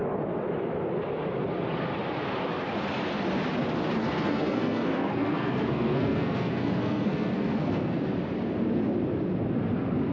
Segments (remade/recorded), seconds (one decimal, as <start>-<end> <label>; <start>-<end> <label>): 0.0-4.0 recorded; 4.0-8.0 remade; 8.0-10.1 recorded